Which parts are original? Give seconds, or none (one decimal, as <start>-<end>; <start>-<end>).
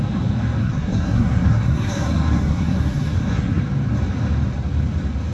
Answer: 0.0-0.6; 3.6-5.3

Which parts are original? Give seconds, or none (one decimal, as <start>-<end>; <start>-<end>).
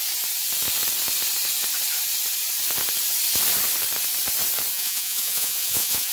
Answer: 0.0-4.7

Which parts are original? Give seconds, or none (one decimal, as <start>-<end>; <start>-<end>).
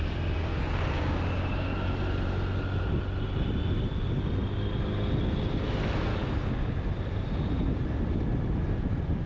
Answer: 0.0-0.5; 1.9-6.1; 6.7-9.3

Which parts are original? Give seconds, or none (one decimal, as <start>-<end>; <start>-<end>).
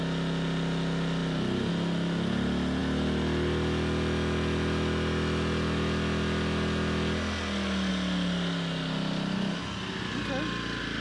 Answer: 0.0-11.0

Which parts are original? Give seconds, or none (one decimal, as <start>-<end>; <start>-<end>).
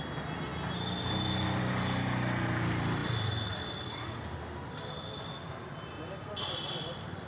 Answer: 0.0-7.3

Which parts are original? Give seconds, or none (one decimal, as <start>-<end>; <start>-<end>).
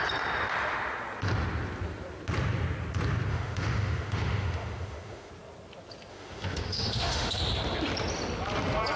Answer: 0.0-3.3; 5.3-6.1; 7.4-9.0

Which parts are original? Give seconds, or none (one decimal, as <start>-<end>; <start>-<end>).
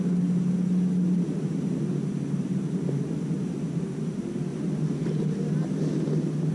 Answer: 0.0-6.5